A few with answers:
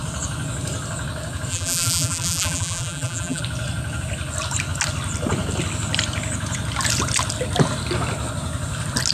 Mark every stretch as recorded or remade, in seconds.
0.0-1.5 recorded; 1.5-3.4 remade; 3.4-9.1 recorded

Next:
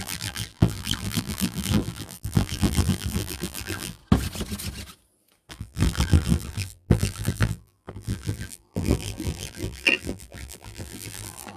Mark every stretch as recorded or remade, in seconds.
0.0-4.0 remade; 4.0-5.5 recorded; 5.5-11.6 remade